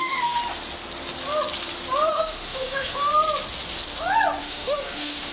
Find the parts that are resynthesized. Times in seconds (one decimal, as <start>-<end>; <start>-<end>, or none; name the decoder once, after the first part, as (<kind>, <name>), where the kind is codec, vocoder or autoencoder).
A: 0.0-0.4 (autoencoder, DAC-VAE); 2.1-3.1; 4.4-5.3